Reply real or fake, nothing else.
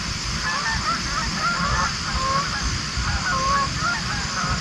real